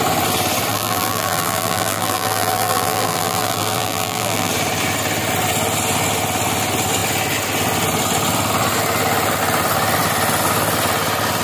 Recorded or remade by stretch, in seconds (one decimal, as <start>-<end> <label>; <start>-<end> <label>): 0.0-0.7 recorded; 0.7-4.5 remade; 4.5-11.4 recorded